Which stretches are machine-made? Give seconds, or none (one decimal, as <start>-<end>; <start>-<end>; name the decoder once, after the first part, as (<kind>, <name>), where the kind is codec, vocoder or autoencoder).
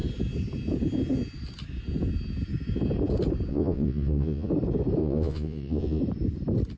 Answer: 3.5-4.5 (vocoder, Vocos); 5.0-6.0